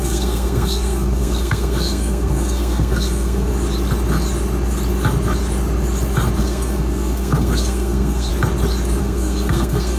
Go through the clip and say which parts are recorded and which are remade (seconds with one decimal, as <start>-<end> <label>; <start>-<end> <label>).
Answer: 0.0-3.5 remade; 3.5-6.4 recorded; 6.4-8.3 remade; 8.3-9.0 recorded; 9.0-10.0 remade